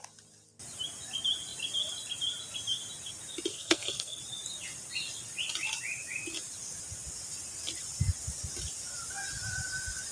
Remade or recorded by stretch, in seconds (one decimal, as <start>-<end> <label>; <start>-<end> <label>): 0.0-3.5 recorded; 3.5-4.2 remade; 4.2-10.1 recorded